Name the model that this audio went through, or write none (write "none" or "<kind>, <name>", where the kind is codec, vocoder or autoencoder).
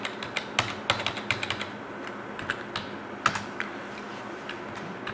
none